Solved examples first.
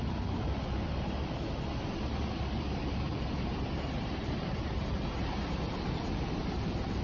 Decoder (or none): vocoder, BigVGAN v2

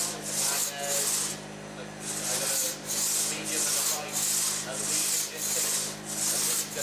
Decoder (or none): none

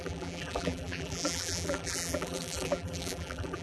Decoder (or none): vocoder, BigVGAN v2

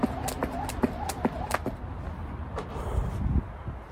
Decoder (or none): none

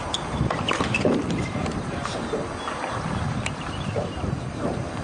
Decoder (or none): vocoder, BigVGAN v2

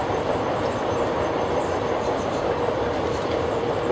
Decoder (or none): vocoder, BigVGAN v2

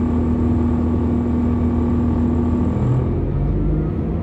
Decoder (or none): none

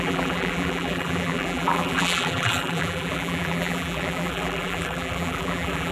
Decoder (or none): vocoder, BigVGAN v2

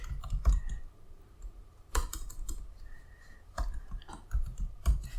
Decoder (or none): vocoder, BigVGAN v2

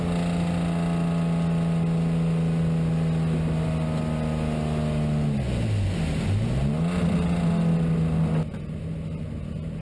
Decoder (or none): none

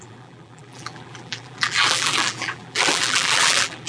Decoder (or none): vocoder, BigVGAN v2